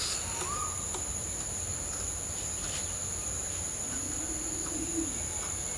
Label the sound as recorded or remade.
recorded